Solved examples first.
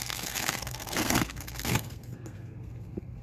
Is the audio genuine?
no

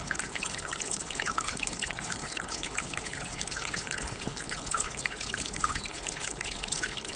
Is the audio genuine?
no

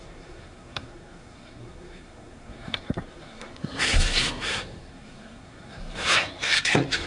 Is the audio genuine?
no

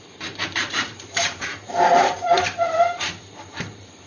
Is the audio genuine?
no